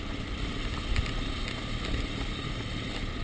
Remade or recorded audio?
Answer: recorded